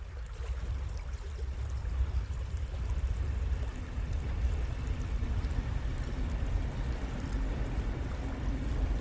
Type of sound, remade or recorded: recorded